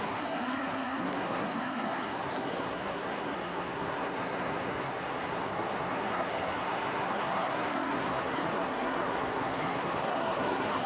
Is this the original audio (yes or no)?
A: no